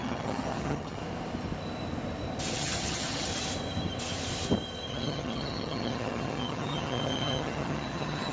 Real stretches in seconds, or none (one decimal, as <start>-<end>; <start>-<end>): 1.0-2.5; 3.3-4.9